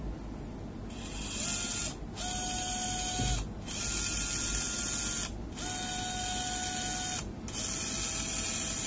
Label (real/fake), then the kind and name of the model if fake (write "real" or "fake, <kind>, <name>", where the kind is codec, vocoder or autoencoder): real